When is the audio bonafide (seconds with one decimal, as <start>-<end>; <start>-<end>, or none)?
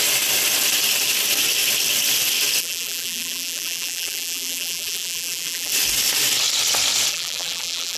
0.0-2.6; 5.7-7.1